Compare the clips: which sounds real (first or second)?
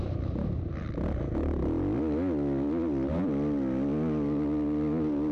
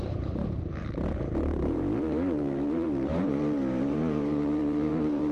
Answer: first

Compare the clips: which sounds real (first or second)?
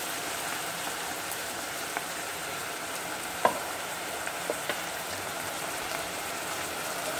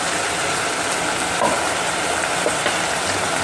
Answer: second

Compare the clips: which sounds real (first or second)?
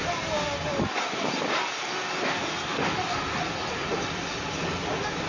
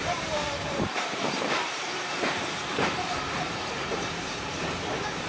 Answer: first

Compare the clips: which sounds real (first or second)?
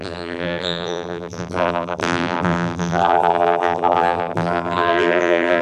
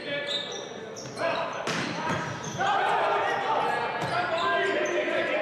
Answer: second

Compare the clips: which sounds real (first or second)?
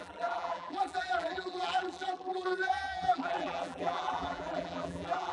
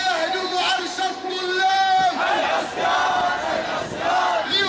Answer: second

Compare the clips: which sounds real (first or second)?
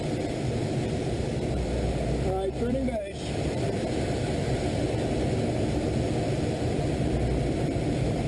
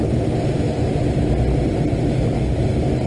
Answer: second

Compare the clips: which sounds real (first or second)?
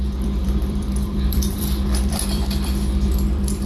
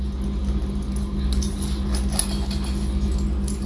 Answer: second